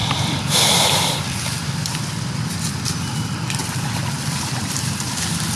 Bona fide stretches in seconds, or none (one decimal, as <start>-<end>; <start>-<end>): 2.0-3.6; 5.1-5.6